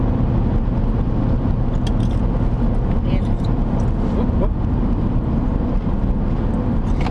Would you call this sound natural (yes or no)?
yes